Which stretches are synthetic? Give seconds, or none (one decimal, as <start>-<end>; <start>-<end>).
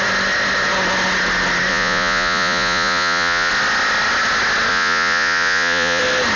1.7-3.5; 4.7-6.0